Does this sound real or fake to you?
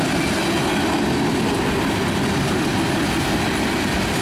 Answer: real